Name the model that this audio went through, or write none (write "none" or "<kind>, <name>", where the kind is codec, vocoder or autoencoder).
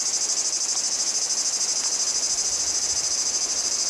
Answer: none